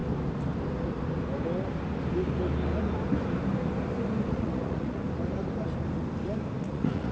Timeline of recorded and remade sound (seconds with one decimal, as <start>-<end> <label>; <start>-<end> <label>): 0.0-4.3 recorded; 4.3-5.0 remade; 5.0-6.6 recorded; 6.6-7.1 remade